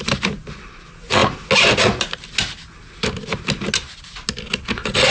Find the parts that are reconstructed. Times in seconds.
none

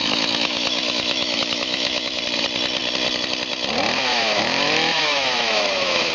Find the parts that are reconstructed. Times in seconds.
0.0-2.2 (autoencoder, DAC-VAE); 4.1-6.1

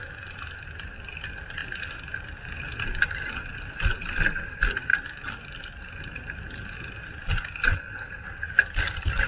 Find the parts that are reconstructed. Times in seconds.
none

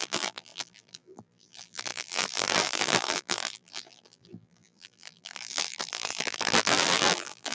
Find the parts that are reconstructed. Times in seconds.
0.0-7.5 (vocoder, BigVGAN v2)

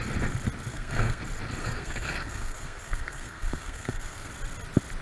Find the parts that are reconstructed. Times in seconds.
0.7-1.2 (codec, SNAC); 1.6-4.3

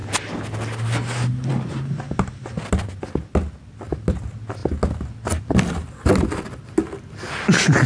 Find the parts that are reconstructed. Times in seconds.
none

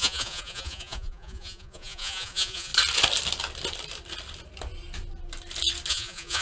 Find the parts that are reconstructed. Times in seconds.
0.0-2.7 (vocoder, Vocos); 5.9-6.4

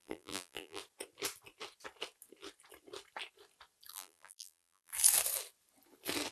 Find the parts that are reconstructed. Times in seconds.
0.0-0.8 (vocoder, BigVGAN v2); 3.9-4.9